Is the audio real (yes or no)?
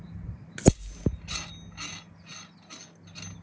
yes